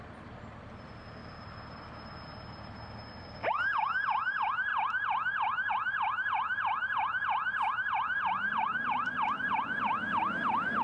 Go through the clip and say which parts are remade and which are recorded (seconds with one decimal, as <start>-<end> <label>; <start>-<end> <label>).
0.0-8.7 recorded; 8.7-9.5 remade; 9.5-10.8 recorded